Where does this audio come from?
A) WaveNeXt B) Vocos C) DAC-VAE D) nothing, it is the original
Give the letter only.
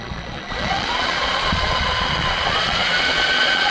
B